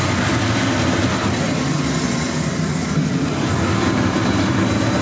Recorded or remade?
recorded